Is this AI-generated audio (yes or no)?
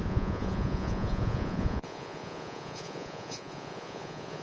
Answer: yes